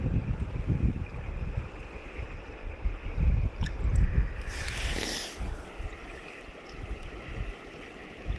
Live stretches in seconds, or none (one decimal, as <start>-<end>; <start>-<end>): 0.0-8.4